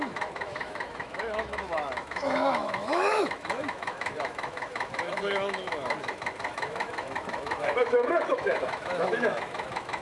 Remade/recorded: remade